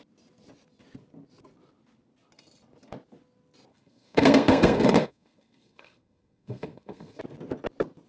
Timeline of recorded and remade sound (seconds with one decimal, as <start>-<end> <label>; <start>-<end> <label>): 0.0-3.7 recorded; 3.7-7.2 remade; 7.2-8.1 recorded